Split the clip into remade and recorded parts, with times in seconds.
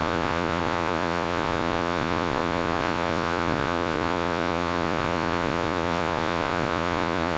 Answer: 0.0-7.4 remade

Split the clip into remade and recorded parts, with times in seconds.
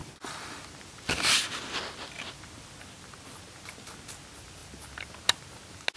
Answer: 0.0-2.8 remade; 2.8-4.6 recorded; 4.6-5.2 remade; 5.2-6.0 recorded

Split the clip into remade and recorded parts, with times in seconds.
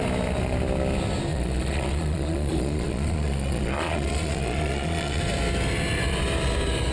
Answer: 0.0-1.3 recorded; 1.3-5.2 remade; 5.2-6.9 recorded